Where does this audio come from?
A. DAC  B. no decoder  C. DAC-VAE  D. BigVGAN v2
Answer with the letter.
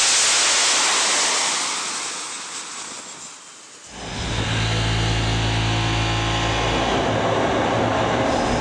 B